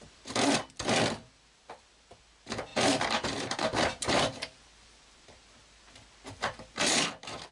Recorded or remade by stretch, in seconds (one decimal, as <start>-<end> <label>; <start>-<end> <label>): 0.0-2.7 recorded; 2.7-7.5 remade